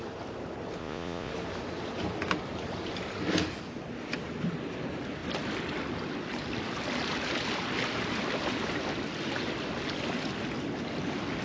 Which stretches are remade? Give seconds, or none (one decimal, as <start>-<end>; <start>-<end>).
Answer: 0.8-1.3